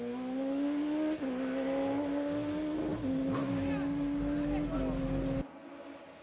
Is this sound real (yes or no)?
yes